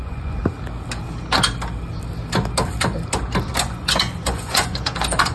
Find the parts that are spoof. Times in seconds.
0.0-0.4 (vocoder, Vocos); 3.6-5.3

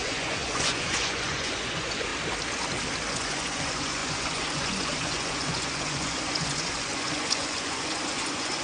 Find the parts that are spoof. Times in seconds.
0.0-2.1 (vocoder, Vocos); 3.1-8.6

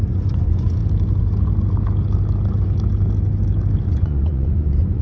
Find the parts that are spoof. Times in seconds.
0.0-0.8 (vocoder, Vocos); 3.8-5.0

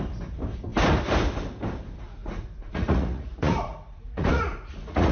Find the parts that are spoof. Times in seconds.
2.2-5.1 (vocoder, Vocos)

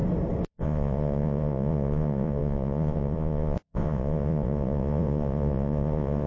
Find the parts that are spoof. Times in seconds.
0.5-6.3 (vocoder, Vocos)

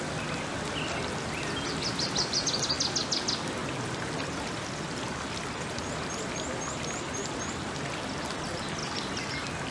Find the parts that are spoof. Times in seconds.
none

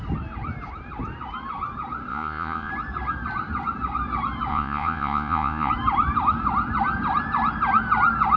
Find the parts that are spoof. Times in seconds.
2.1-2.7 (vocoder, Vocos); 4.5-5.7

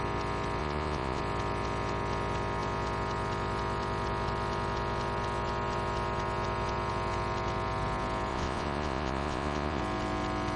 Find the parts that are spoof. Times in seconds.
0.6-1.2 (vocoder, Vocos); 8.3-9.8